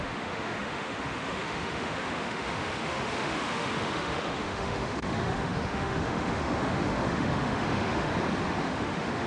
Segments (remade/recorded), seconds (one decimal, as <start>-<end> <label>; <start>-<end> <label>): 0.0-8.1 remade; 8.1-8.6 recorded; 8.6-9.3 remade